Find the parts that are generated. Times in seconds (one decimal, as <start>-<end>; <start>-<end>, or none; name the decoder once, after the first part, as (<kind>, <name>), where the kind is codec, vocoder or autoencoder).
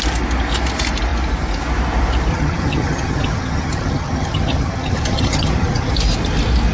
2.3-5.9 (vocoder, HiFi-GAN)